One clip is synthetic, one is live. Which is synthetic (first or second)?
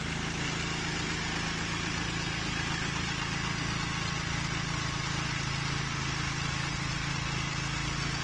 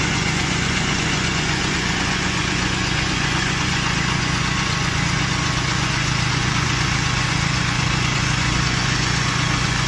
second